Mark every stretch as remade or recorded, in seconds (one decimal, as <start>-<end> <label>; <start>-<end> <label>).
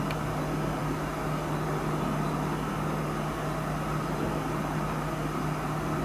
0.0-6.0 recorded